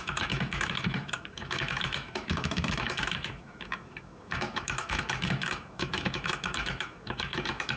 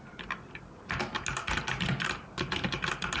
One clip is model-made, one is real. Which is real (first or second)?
second